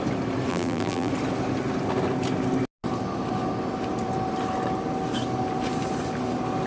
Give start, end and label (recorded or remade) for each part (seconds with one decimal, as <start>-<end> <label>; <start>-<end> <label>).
0.0-0.5 recorded; 0.5-1.1 remade; 1.1-6.7 recorded